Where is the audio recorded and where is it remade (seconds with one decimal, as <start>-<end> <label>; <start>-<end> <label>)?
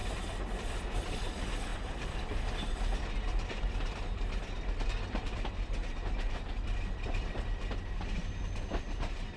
0.0-0.5 recorded; 0.5-9.4 remade